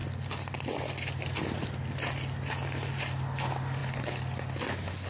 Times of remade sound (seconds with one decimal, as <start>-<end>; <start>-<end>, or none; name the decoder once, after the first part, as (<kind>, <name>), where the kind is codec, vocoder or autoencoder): none